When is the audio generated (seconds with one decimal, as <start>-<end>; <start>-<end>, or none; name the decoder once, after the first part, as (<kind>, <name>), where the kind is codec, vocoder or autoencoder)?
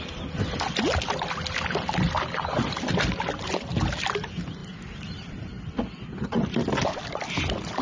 none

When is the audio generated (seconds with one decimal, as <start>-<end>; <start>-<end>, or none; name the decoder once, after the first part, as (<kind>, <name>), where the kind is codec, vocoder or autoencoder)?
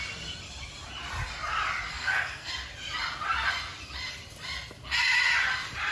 1.9-2.5 (codec, SNAC)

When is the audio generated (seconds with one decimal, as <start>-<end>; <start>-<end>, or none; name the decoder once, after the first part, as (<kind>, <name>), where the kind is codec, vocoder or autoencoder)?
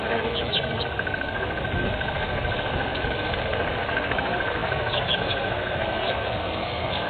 0.0-7.1 (codec, SNAC)